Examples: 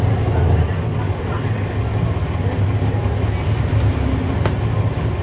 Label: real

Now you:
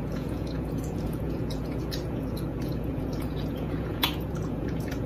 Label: fake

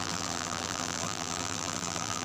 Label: fake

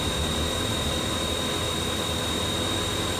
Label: real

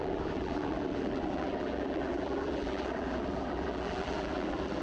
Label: fake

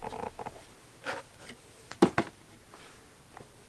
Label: real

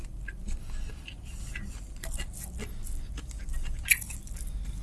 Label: real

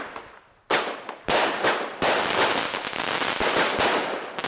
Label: real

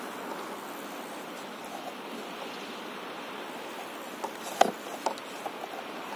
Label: real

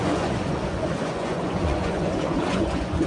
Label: fake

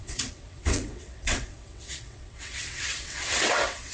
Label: fake